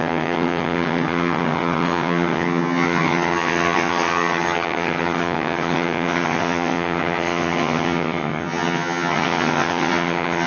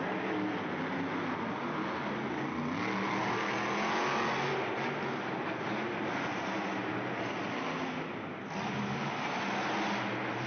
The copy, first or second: first